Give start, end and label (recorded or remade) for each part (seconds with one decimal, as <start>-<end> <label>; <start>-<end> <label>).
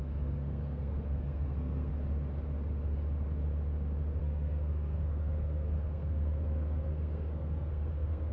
0.0-1.9 remade; 1.9-4.2 recorded; 4.2-8.3 remade